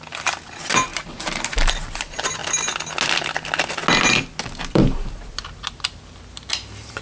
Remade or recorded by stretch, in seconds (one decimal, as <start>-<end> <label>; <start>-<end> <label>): 0.0-0.9 recorded; 0.9-1.7 remade; 1.7-7.0 recorded